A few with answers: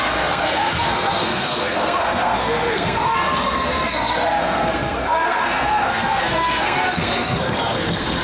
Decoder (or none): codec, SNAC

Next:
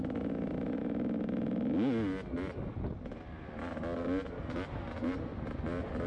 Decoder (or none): none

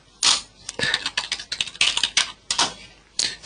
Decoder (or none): none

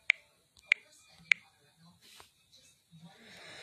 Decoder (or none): none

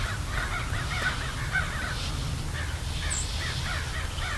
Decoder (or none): none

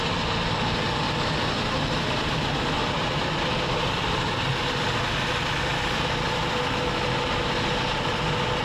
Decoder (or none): none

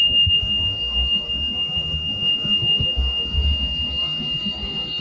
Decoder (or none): codec, SNAC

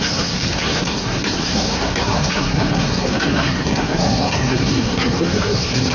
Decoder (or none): codec, SNAC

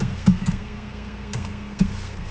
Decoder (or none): codec, SNAC